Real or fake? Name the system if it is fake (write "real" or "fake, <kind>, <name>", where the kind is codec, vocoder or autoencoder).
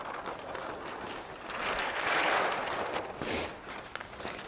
real